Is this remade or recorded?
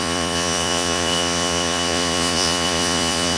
remade